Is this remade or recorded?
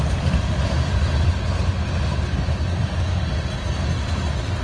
recorded